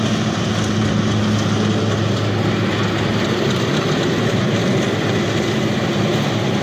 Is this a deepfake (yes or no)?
no